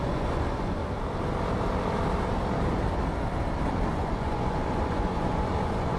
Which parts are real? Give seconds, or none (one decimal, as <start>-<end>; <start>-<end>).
0.8-3.9